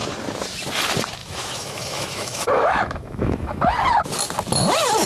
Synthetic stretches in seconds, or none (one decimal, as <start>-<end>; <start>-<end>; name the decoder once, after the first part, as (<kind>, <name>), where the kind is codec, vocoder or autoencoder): 1.2-3.6 (autoencoder, DAC-VAE)